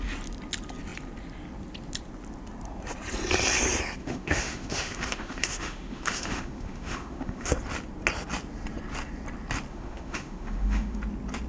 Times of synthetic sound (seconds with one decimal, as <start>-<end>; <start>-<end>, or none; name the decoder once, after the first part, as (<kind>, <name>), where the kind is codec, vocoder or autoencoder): 4.0-7.5 (autoencoder, DAC-VAE); 9.7-11.0